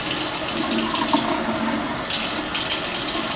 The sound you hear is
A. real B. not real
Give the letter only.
A